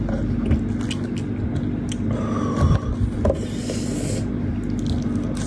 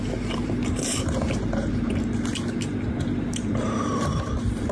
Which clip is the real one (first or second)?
first